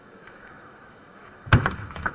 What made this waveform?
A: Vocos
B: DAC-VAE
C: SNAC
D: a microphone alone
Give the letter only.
B